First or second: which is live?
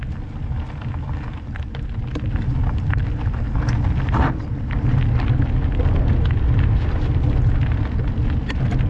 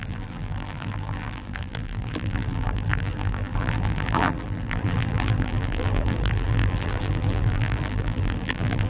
first